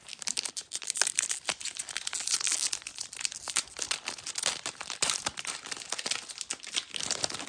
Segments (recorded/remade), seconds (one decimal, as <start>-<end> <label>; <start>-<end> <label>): 0.0-7.5 recorded